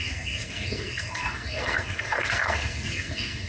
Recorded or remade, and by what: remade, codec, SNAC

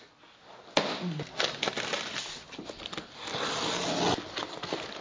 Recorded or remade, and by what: recorded